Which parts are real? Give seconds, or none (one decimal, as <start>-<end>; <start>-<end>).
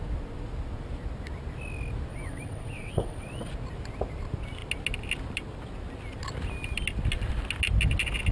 0.0-2.1; 3.5-8.3